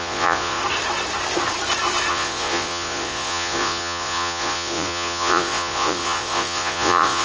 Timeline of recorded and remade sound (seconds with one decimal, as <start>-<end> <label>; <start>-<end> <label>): 0.0-0.6 remade; 0.6-2.1 recorded; 2.1-7.2 remade